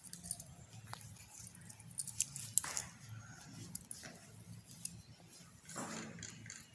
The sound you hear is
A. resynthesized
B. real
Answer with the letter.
B